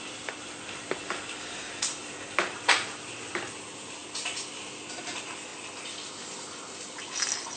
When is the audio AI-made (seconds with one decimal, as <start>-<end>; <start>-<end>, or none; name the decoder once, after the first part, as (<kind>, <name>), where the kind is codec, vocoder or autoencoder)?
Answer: none